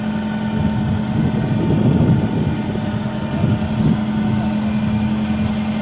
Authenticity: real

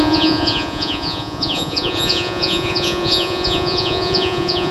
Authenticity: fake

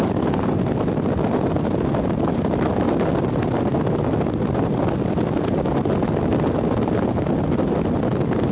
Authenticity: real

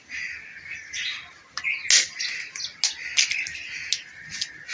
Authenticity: real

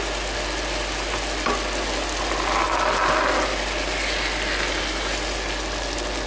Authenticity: real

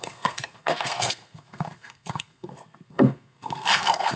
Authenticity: fake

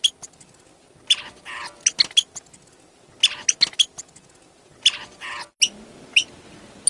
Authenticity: real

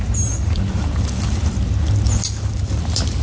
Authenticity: real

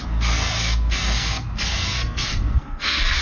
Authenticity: fake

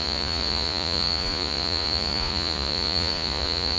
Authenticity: fake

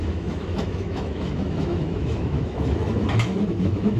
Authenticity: fake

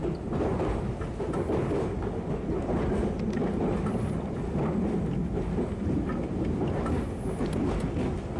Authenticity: real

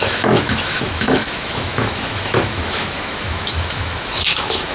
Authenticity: fake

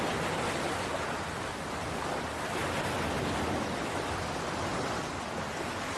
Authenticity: real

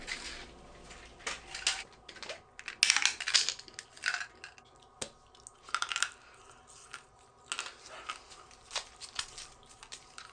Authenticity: real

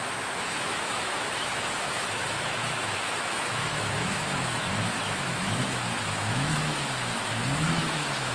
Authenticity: fake